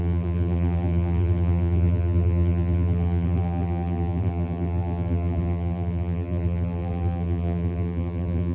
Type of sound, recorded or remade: remade